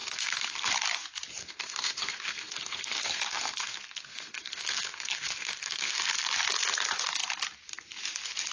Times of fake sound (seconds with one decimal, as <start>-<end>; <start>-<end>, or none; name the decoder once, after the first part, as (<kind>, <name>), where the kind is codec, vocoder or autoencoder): 0.0-0.7 (codec, SNAC); 1.4-6.0